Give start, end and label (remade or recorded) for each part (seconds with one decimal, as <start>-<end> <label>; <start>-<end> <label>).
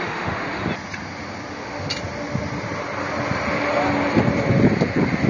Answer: 0.0-0.6 remade; 0.6-1.5 recorded; 1.5-1.9 remade; 1.9-5.3 recorded